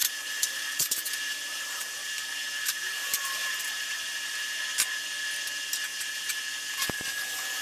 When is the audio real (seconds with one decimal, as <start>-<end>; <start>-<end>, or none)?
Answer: 4.6-5.9; 6.4-7.6